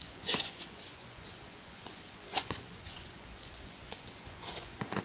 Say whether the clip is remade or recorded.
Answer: remade